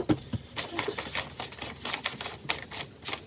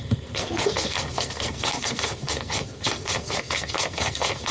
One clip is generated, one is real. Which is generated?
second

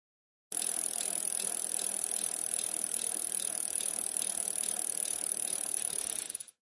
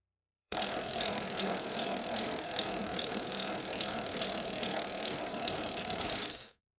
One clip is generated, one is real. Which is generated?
second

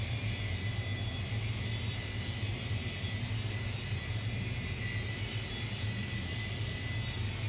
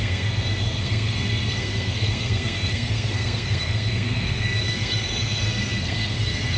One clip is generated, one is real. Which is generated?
second